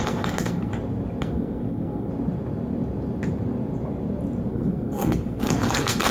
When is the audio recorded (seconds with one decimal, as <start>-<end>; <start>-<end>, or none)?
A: 0.7-1.2; 2.1-4.5